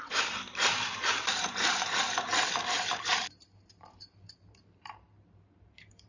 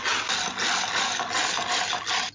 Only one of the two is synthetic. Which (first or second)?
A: first